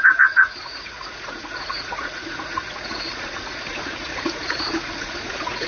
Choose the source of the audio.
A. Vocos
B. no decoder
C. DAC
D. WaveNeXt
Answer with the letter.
A